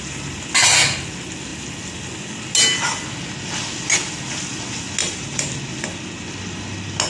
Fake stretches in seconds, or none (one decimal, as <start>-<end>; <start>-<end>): 5.0-5.5